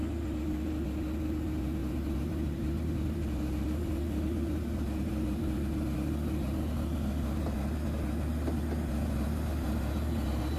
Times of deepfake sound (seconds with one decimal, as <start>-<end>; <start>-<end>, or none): 1.8-5.7